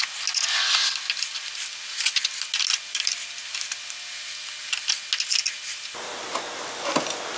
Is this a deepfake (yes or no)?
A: no